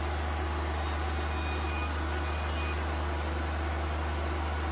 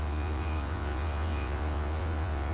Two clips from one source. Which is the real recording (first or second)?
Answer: first